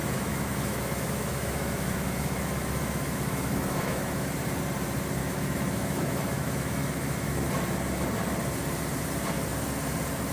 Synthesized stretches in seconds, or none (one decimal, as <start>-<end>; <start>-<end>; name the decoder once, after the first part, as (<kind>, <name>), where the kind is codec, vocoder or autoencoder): 0.0-4.3 (autoencoder, DAC-VAE); 5.2-7.5